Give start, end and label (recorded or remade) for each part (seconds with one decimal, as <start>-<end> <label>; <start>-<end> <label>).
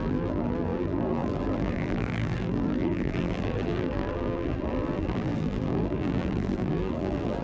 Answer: 0.0-7.4 remade